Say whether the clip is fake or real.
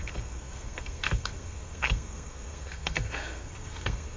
fake